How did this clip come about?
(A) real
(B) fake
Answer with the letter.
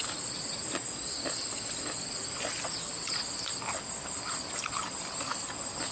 A